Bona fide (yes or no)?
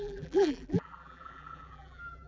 no